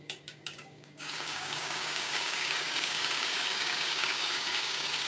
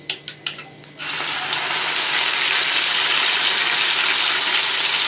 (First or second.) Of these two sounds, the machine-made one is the first